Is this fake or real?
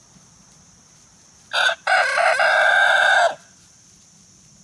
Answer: real